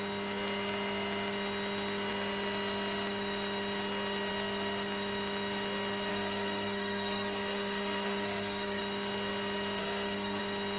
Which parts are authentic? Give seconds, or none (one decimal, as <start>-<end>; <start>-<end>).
0.0-6.1; 8.8-9.8; 10.4-10.8